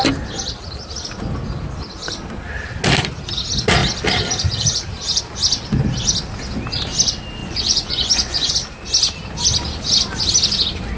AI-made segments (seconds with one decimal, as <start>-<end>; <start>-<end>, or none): 7.4-8.5